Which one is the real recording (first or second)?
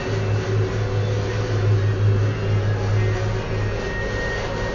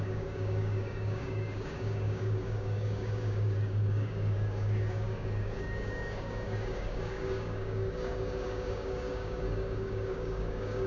first